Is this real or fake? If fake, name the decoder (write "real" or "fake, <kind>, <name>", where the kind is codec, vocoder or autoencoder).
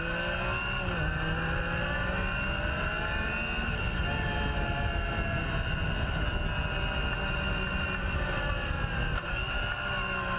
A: real